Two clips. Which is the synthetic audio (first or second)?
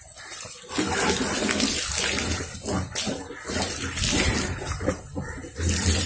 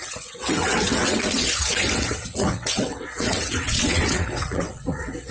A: second